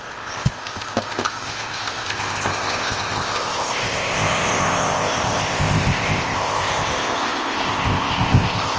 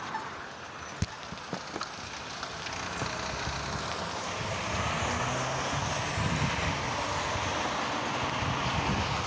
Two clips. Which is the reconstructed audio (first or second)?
first